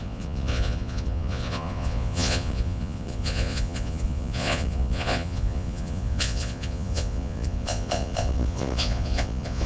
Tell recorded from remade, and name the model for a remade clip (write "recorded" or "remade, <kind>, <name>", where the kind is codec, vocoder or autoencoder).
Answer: remade, vocoder, Vocos